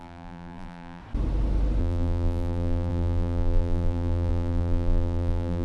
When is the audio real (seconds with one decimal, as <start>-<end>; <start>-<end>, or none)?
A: 1.0-1.8